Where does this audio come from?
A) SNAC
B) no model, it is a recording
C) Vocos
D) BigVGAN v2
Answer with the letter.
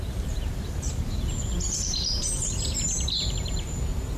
D